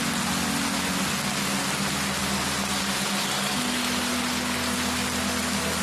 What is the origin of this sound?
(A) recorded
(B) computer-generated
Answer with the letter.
A